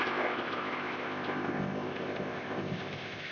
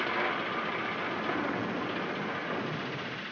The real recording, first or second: second